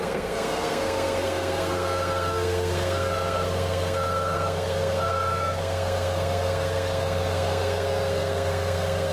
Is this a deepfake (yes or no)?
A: yes